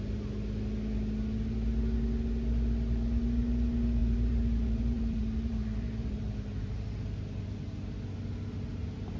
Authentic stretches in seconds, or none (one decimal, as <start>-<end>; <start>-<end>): 0.0-4.0; 7.4-9.2